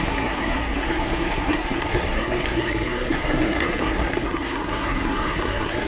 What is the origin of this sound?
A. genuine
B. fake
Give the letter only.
B